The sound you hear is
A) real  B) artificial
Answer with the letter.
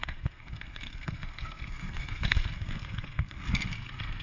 B